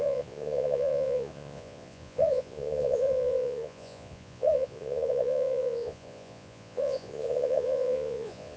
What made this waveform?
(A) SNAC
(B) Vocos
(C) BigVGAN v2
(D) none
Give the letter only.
B